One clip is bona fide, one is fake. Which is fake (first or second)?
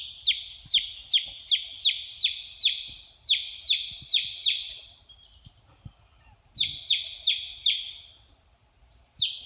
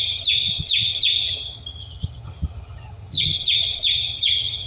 second